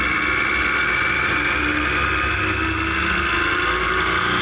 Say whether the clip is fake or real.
real